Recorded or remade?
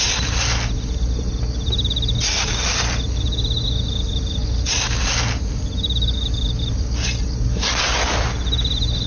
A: recorded